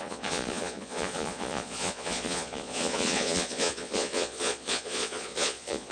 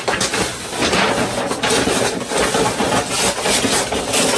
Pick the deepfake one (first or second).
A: first